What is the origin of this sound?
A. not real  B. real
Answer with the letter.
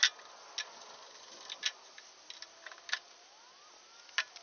B